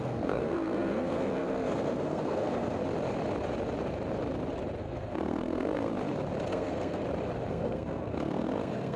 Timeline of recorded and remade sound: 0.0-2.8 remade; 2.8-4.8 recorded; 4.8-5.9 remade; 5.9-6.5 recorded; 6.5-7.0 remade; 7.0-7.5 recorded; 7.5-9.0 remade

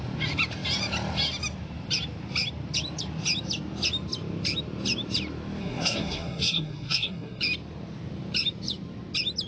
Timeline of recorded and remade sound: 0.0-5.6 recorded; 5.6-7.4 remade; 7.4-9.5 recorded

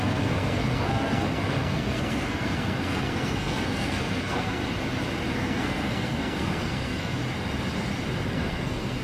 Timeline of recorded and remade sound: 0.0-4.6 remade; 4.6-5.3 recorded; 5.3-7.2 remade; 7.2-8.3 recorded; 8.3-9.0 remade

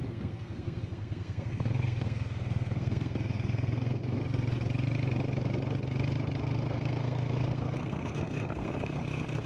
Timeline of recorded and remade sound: 0.0-4.2 remade; 4.2-6.4 recorded; 6.4-9.5 remade

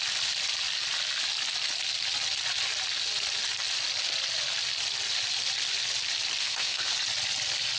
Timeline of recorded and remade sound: 0.0-6.4 recorded; 6.4-6.9 remade; 6.9-7.8 recorded

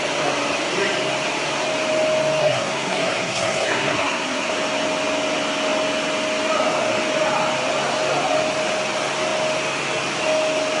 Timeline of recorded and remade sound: 0.0-2.4 recorded; 2.4-4.5 remade; 4.5-10.8 recorded

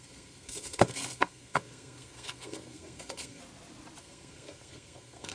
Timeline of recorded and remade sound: 0.0-3.4 remade; 3.4-4.0 recorded; 4.0-5.3 remade